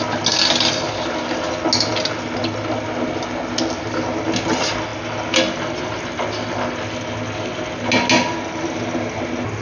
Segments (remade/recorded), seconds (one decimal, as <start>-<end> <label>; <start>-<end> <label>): 0.0-9.6 recorded